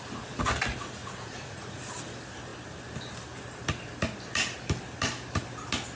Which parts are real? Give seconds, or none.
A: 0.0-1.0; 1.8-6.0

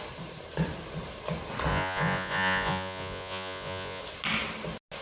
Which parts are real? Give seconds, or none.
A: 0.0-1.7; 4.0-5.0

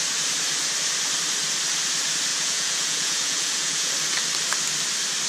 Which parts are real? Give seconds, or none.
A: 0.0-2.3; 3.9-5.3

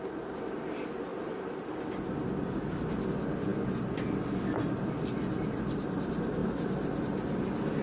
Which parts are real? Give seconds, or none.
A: 0.0-7.8

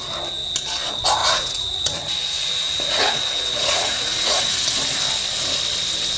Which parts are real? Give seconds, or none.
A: 0.0-1.2; 4.6-6.2